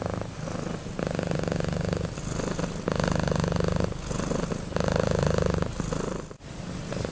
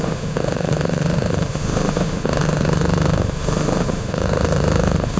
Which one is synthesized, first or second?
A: second